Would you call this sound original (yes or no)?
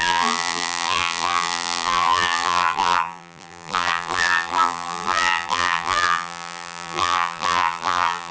no